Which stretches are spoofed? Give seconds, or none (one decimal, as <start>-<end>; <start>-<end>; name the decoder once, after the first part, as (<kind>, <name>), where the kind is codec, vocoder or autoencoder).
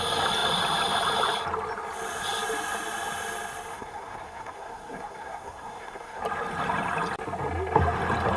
3.7-6.2 (codec, SNAC)